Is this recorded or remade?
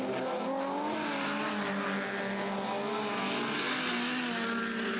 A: recorded